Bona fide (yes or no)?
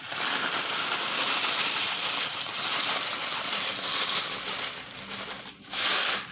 yes